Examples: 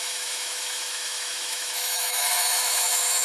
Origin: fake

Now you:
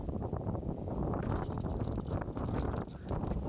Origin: real